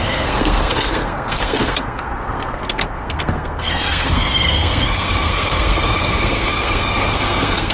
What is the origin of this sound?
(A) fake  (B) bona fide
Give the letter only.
A